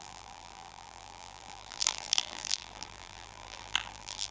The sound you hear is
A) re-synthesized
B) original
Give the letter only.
A